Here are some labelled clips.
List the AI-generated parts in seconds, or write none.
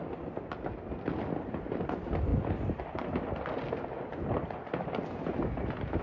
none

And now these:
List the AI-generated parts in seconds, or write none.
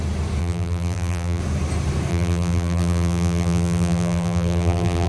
0.4-1.4; 2.1-5.1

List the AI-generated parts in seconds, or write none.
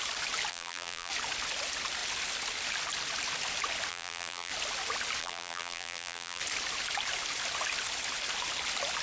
0.5-1.1; 3.9-4.5; 5.2-6.4